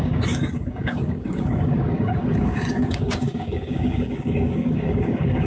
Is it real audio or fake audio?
fake